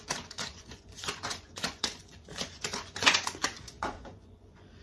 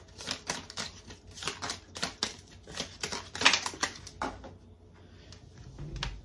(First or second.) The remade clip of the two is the first